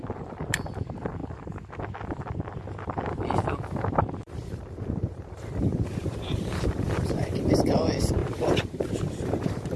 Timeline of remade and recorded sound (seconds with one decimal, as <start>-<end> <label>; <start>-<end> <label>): 0.0-1.2 remade; 1.2-4.2 recorded; 4.2-9.8 remade